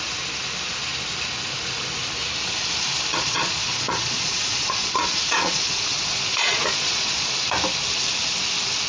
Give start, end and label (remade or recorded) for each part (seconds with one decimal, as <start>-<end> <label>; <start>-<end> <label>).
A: 0.0-3.1 recorded; 3.1-7.3 remade; 7.3-8.9 recorded